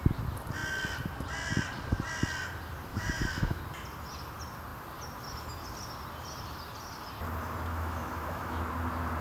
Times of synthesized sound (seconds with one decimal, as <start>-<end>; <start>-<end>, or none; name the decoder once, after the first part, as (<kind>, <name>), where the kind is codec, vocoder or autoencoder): 2.9-3.6 (autoencoder, DAC-VAE); 7.7-8.6